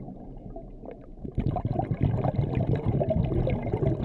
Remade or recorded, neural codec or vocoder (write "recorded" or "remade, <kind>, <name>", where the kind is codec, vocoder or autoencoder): recorded